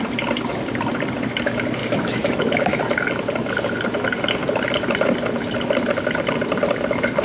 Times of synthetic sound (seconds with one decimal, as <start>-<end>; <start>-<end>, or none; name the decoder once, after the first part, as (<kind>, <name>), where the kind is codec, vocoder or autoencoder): 1.8-2.8 (autoencoder, DAC-VAE)